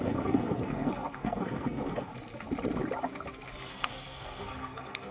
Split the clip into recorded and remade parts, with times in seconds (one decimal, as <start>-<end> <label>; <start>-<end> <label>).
0.0-2.1 remade; 2.1-3.7 recorded; 3.7-5.1 remade